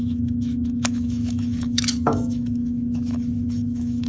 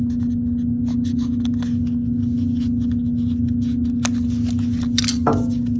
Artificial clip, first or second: first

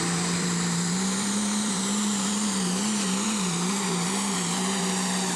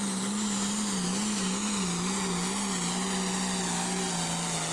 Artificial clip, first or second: first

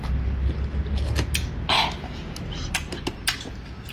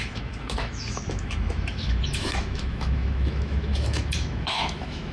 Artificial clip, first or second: second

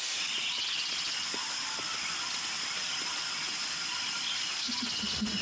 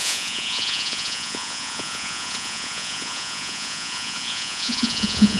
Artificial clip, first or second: second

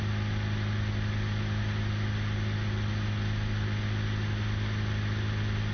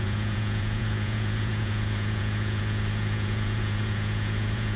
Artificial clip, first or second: second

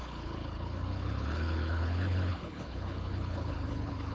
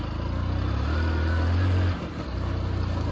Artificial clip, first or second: first